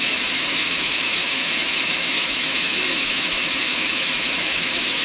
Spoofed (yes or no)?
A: yes